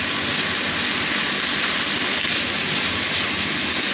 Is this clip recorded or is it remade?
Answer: recorded